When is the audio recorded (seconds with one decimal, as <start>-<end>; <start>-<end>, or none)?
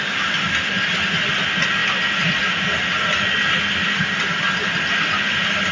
0.0-5.7